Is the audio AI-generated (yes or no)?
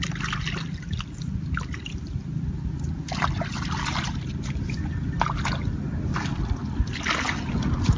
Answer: no